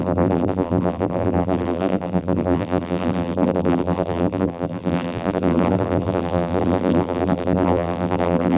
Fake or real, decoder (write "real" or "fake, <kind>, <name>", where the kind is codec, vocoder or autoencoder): fake, vocoder, BigVGAN v2